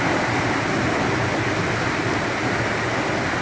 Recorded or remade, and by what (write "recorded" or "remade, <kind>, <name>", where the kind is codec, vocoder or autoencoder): recorded